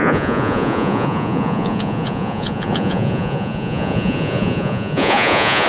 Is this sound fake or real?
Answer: fake